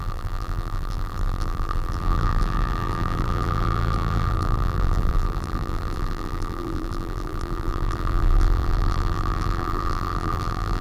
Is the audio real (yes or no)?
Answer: no